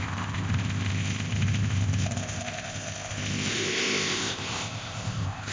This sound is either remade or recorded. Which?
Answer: remade